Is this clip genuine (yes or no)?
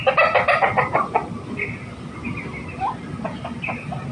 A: yes